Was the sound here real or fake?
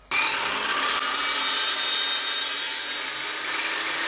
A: real